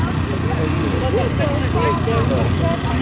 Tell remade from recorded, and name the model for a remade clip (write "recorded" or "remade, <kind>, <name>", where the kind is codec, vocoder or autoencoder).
recorded